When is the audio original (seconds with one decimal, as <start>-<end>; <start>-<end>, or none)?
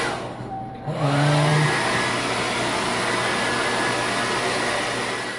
0.0-5.4